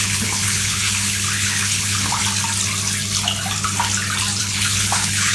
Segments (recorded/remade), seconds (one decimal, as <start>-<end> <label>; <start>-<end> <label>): 0.0-2.2 remade; 2.2-4.4 recorded; 4.4-5.3 remade